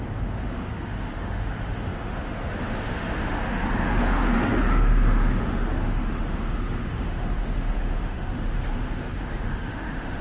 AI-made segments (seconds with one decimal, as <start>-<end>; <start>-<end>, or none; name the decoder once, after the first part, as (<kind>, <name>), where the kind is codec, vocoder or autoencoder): 0.0-10.2 (autoencoder, DAC-VAE)